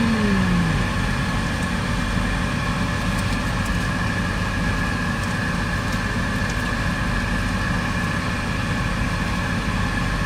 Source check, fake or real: real